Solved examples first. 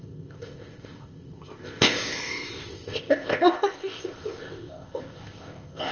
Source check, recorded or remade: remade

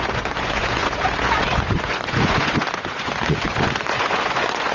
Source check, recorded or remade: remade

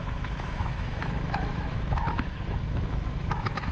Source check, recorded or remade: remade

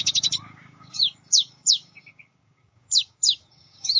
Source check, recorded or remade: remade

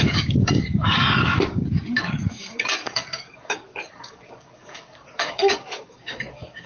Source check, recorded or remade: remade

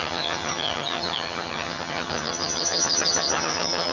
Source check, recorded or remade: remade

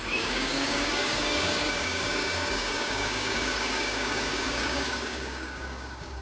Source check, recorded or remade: remade